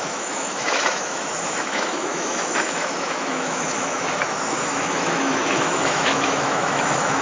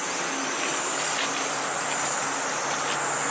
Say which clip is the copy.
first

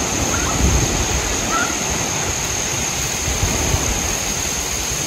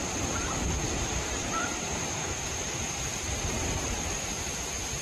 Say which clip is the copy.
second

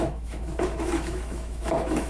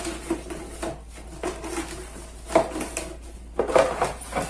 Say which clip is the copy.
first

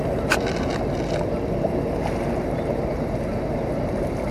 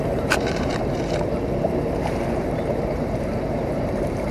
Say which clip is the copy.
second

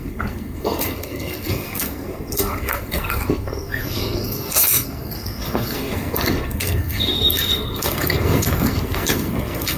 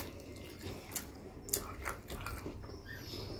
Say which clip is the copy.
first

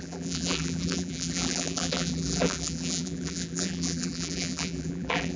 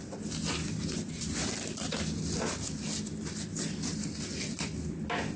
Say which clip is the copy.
first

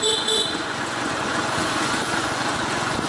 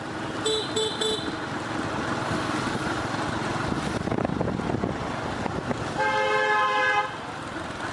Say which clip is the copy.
first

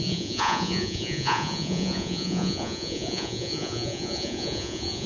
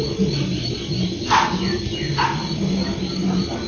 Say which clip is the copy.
first